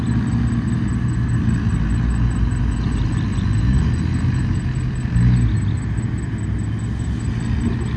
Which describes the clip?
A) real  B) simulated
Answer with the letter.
A